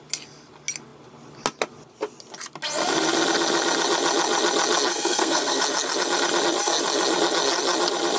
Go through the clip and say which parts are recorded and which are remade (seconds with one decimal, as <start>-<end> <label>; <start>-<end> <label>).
0.0-4.9 recorded; 4.9-5.6 remade; 5.6-8.2 recorded